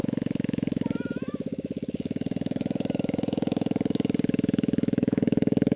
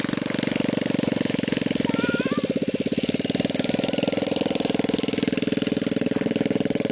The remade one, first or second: first